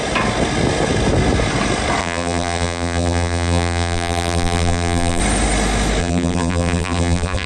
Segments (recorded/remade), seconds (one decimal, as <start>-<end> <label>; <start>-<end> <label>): 0.0-2.0 recorded; 2.0-5.2 remade; 5.2-6.0 recorded; 6.0-7.5 remade